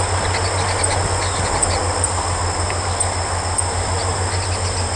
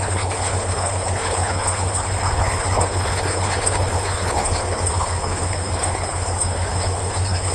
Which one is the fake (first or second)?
second